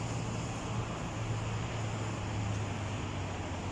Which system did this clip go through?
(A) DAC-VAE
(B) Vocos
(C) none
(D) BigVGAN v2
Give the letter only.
C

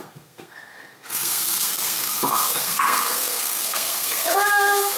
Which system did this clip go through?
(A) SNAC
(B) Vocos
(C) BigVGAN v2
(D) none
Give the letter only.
A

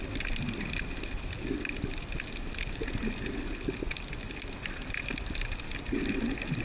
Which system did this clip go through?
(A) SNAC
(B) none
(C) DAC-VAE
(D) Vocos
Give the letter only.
B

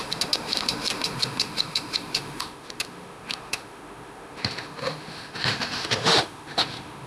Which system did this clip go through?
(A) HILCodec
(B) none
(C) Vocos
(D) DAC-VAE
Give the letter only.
D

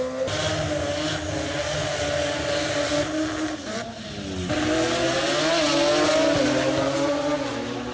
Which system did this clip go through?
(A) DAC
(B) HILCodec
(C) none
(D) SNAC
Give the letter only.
C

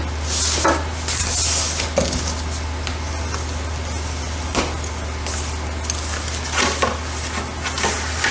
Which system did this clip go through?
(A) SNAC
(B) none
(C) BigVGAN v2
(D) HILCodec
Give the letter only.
B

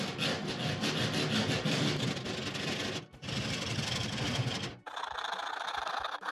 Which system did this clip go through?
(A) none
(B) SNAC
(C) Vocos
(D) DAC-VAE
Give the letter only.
A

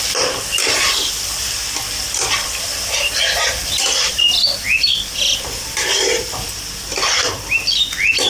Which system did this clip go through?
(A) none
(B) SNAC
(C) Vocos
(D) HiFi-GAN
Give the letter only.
A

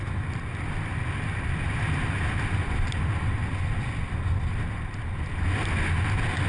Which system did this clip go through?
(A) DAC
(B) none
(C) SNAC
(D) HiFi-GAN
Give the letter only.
B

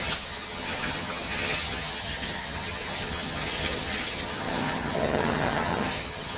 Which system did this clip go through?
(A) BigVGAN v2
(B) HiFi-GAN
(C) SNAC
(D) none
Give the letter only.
B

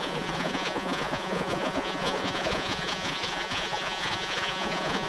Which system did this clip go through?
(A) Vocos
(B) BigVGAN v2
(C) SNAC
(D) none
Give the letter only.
A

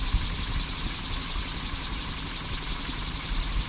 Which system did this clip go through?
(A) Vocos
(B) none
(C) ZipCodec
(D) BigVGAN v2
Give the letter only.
B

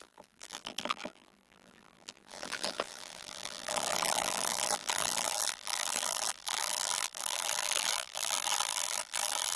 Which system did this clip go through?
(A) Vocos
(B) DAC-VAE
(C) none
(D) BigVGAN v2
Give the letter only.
D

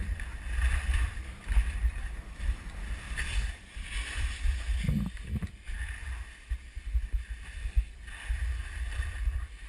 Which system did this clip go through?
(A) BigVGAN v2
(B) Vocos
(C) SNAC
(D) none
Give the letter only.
D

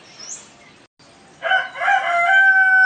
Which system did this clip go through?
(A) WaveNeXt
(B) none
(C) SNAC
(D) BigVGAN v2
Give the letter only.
B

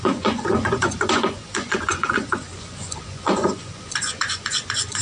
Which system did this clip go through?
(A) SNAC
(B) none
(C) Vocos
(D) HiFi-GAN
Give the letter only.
C